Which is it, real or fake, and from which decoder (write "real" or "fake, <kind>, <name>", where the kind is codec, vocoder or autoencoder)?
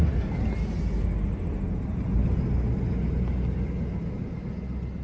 real